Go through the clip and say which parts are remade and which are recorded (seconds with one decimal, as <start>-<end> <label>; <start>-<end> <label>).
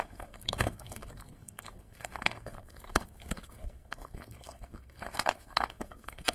0.0-6.3 remade